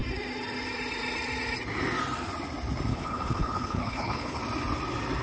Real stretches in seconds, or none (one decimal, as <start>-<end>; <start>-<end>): 0.0-2.9; 4.4-5.2